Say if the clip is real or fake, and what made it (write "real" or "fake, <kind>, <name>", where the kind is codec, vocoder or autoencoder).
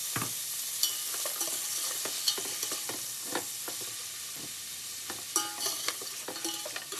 real